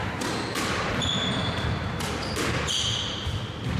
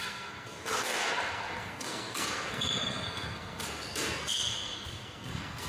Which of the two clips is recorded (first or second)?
first